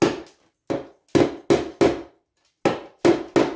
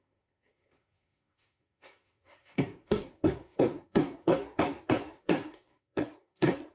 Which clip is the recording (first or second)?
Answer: first